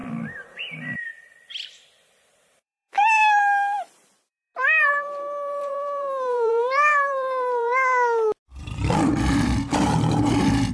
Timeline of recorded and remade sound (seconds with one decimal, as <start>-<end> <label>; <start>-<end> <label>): 0.0-3.2 remade; 3.2-3.9 recorded; 3.9-7.7 remade; 7.7-8.6 recorded; 8.6-9.1 remade; 9.1-10.7 recorded